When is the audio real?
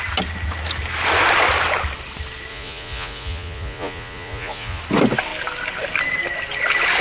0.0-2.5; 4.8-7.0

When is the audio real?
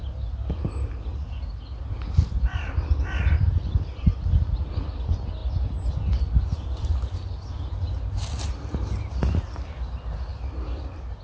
0.0-11.2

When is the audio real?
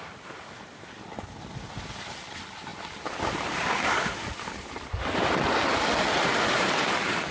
0.0-7.3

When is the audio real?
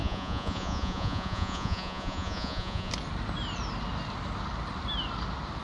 2.9-5.6